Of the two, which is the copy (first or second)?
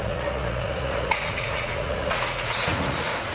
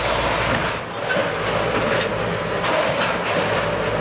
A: first